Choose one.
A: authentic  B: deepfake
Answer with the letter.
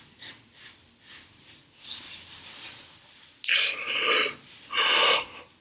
A